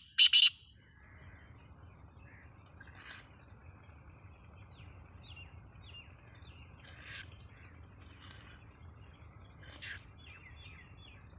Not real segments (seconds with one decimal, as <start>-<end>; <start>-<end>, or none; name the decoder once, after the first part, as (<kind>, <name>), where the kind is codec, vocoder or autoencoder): none